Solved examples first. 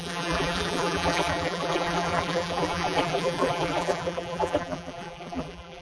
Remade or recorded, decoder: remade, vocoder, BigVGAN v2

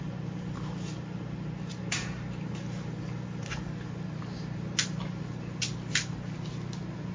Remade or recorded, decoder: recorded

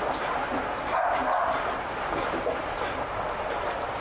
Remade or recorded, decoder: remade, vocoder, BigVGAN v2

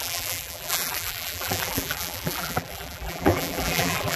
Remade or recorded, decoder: remade, vocoder, BigVGAN v2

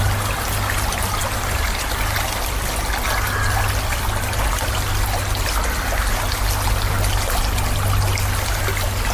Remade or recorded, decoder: recorded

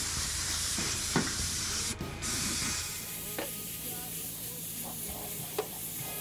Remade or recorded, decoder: remade, vocoder, BigVGAN v2